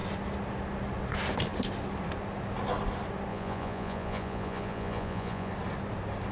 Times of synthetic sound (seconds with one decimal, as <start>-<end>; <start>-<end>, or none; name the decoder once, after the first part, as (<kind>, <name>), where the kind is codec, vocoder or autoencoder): 3.3-5.5 (vocoder, Vocos)